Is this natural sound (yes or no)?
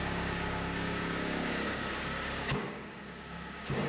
no